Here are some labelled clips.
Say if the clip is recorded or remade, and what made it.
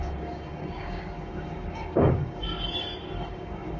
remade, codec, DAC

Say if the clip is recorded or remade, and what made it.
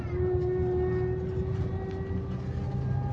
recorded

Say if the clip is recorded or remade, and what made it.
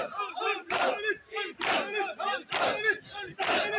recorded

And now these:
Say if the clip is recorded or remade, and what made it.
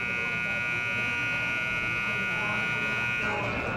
recorded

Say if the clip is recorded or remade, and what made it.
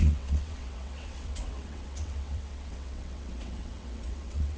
remade, vocoder, WaveNeXt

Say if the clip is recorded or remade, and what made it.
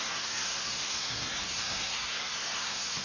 remade, codec, SNAC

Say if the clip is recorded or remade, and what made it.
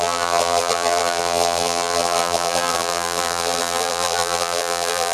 remade, vocoder, BigVGAN v2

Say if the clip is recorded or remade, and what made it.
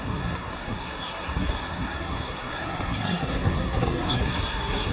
remade, codec, SNAC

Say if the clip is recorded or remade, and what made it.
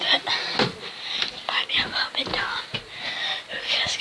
recorded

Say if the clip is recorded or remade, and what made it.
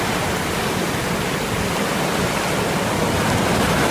recorded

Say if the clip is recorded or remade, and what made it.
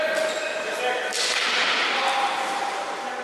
recorded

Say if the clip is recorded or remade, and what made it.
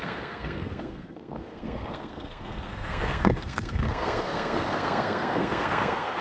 remade, codec, SNAC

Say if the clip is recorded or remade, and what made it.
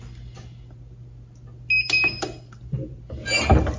recorded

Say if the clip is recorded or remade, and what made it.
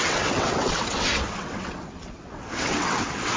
remade, vocoder, WaveNeXt